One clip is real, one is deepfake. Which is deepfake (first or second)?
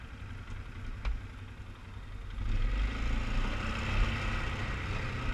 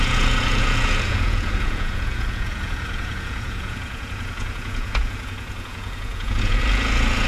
second